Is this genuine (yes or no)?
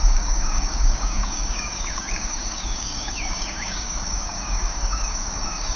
no